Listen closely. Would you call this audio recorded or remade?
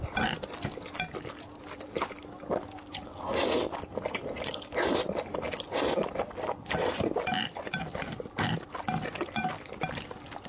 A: recorded